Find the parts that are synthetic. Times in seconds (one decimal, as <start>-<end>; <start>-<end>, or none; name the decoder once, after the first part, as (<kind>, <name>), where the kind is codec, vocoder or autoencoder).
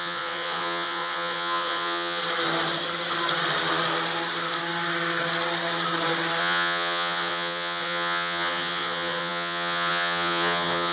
0.0-2.2 (vocoder, Vocos); 6.4-10.9